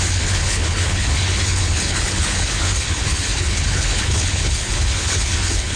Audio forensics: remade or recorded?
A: remade